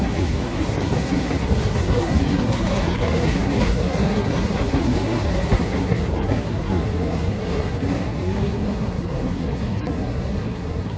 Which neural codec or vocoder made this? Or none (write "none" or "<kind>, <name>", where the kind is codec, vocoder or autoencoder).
codec, SNAC